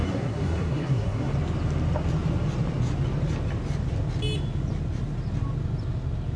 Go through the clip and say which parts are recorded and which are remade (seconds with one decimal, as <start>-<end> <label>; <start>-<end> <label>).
0.0-1.3 remade; 1.3-6.4 recorded